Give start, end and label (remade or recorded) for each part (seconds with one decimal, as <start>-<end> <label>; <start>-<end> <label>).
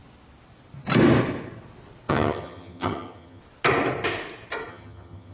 0.0-2.1 recorded; 2.1-3.4 remade; 3.4-4.7 recorded; 4.7-5.3 remade